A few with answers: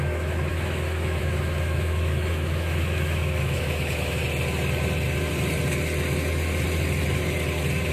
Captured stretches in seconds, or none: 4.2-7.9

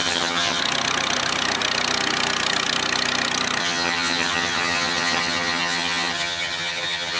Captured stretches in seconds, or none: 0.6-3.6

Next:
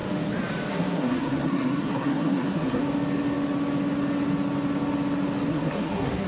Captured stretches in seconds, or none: 0.0-0.7; 2.8-5.5